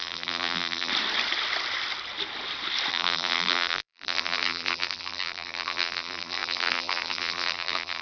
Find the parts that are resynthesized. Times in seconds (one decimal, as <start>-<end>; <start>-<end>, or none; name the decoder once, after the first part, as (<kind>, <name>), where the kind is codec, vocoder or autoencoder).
0.0-0.9 (vocoder, BigVGAN v2); 2.9-8.0